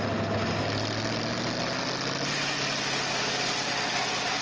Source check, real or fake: real